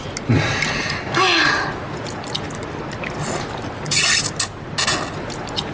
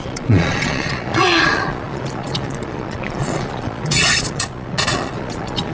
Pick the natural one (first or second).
first